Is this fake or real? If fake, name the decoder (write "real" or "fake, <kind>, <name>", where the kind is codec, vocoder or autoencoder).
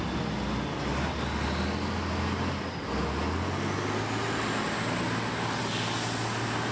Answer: real